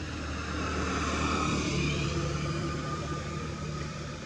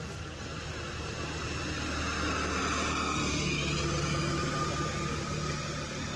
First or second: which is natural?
second